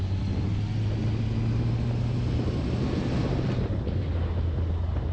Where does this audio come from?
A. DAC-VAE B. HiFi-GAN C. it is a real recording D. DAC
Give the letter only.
C